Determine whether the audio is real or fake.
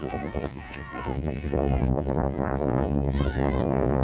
fake